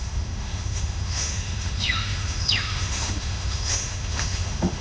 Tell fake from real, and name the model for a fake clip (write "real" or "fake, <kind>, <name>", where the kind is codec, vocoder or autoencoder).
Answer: fake, autoencoder, DAC-VAE